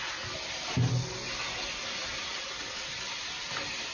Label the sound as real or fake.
real